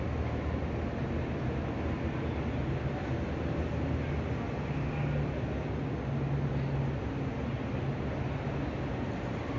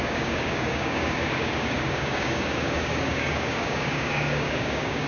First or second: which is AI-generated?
second